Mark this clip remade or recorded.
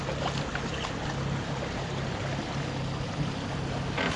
recorded